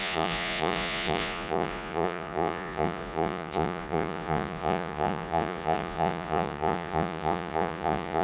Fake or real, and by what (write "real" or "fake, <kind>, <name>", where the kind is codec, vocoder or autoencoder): fake, vocoder, Vocos